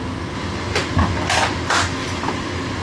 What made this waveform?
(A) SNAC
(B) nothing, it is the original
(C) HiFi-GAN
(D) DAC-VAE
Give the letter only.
B